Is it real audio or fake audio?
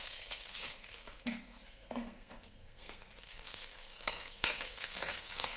fake